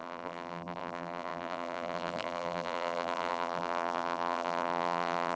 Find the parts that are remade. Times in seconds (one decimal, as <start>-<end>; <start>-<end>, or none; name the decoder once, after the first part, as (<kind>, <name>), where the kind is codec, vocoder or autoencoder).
0.0-5.3 (vocoder, BigVGAN v2)

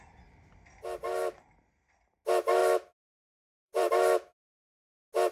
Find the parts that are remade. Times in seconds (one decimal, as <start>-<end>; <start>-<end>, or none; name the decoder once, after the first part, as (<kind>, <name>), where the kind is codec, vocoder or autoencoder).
2.6-3.9 (vocoder, BigVGAN v2)

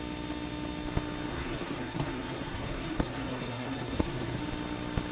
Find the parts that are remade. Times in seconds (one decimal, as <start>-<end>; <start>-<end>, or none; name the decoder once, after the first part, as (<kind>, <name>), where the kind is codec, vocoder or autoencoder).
1.3-4.4 (codec, SNAC)

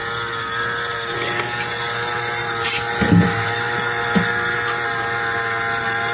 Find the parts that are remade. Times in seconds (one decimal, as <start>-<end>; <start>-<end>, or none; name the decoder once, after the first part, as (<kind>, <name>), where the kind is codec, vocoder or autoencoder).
none

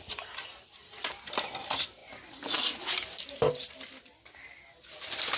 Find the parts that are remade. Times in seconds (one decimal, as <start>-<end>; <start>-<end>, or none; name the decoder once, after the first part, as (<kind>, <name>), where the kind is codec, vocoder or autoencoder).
none

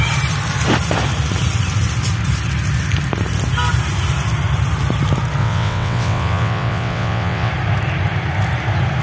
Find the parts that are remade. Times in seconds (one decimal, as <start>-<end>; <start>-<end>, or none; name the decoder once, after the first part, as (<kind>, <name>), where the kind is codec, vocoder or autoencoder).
5.4-7.5 (vocoder, WaveNeXt)

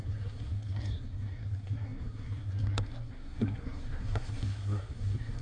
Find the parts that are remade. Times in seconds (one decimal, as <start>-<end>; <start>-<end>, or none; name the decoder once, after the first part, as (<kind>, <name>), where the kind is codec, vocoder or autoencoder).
0.0-5.4 (codec, SNAC)

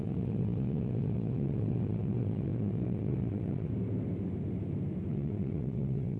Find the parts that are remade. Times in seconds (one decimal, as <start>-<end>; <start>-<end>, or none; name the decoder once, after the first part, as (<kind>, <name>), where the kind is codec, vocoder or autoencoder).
0.0-3.7 (vocoder, WaveNeXt); 5.1-6.2